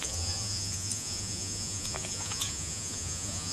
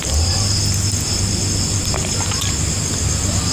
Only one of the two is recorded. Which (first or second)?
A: second